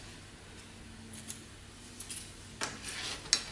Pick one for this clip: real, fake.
real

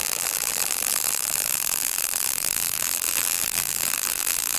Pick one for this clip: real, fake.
fake